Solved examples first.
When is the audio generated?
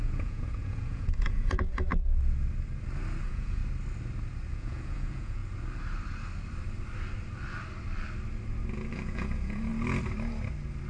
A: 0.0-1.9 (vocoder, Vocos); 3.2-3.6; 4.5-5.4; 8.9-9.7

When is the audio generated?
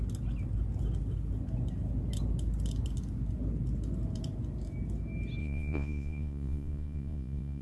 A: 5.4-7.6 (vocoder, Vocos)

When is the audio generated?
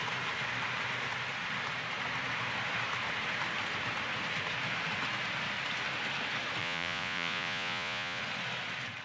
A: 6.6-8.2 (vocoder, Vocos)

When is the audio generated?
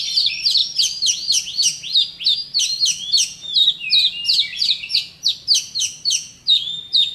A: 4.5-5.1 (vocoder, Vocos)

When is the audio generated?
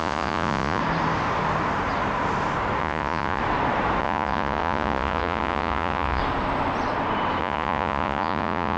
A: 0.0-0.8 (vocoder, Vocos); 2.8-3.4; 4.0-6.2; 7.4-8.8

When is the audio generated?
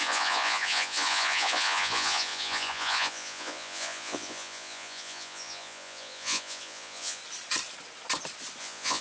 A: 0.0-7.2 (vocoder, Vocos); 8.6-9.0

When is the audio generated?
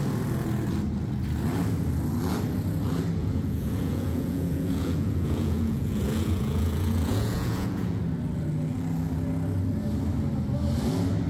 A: 3.2-8.0 (vocoder, Vocos)